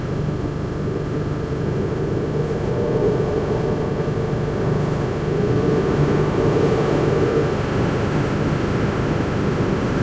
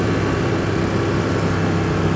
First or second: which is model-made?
first